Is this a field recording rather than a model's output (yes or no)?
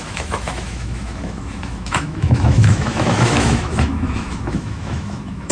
no